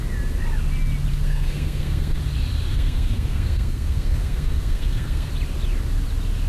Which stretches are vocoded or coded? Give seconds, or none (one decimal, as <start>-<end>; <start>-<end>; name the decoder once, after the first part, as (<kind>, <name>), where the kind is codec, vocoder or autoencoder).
1.1-2.2 (codec, SNAC); 2.7-5.3